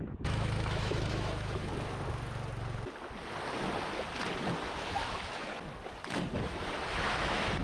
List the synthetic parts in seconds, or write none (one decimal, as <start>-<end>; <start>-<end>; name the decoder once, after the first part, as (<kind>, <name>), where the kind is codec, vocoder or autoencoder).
0.0-1.7 (autoencoder, DAC-VAE); 4.6-5.5; 6.9-7.6